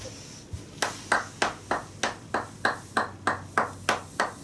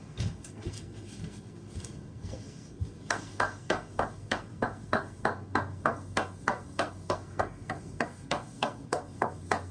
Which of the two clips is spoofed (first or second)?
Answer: second